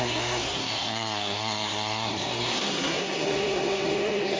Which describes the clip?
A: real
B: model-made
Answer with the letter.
B